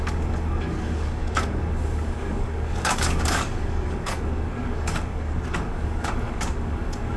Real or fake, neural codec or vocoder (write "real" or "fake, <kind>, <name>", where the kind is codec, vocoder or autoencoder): fake, codec, DAC